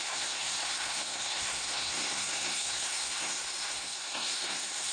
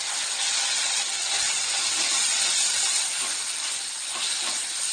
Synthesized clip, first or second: first